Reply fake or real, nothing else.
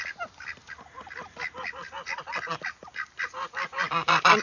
real